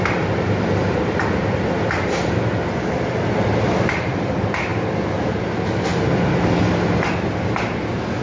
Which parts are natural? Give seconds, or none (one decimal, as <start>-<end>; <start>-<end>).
0.0-8.2